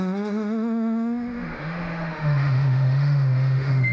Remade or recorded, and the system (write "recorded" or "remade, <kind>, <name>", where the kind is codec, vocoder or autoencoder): remade, autoencoder, DAC-VAE